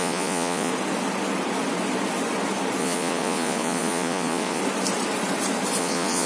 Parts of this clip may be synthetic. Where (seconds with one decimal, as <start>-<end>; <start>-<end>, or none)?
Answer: 0.0-0.7; 2.8-4.6; 5.8-6.3